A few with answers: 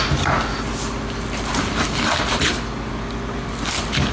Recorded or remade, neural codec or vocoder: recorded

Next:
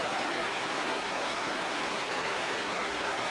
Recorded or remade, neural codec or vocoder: remade, codec, SNAC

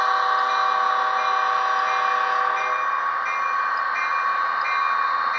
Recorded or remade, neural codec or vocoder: recorded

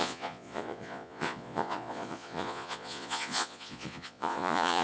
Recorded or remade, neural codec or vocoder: remade, vocoder, Vocos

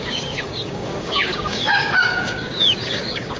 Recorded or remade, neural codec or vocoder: remade, codec, DAC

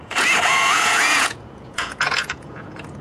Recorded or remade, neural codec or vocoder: remade, vocoder, Vocos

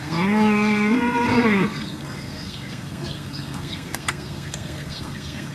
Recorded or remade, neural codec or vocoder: remade, codec, SNAC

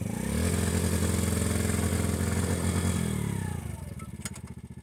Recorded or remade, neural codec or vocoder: recorded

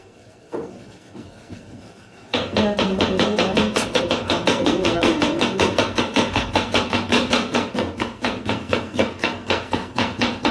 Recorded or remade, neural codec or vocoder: remade, codec, SNAC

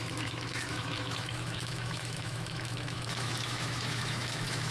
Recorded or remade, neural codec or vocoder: remade, autoencoder, DAC-VAE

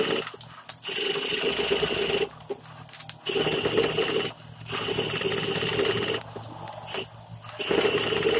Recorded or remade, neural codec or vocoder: recorded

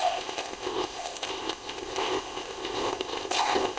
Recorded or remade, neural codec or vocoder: remade, codec, ZipCodec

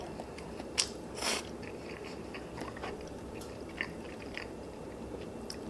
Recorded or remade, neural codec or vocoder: remade, vocoder, BigVGAN v2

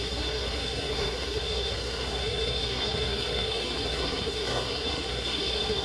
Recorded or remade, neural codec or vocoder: remade, codec, SNAC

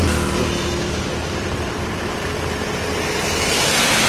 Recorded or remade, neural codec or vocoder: recorded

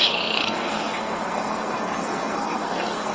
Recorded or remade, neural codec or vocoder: remade, codec, SNAC